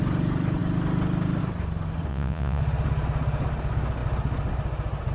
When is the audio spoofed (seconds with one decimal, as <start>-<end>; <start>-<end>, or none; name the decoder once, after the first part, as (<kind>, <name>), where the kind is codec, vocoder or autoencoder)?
2.1-2.6 (vocoder, Vocos)